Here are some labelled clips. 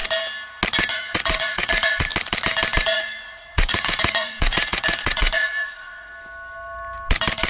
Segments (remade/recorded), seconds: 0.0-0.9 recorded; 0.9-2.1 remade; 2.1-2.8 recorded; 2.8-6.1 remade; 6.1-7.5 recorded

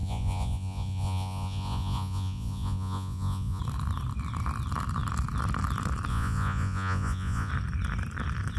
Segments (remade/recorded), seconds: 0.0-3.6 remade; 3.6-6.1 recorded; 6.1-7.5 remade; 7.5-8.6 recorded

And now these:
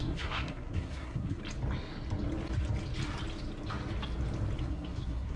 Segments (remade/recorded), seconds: 0.0-1.4 remade; 1.4-4.6 recorded; 4.6-5.4 remade